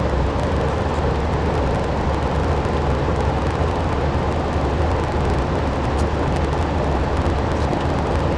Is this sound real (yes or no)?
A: yes